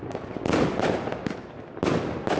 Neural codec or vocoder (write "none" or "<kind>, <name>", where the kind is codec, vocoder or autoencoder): none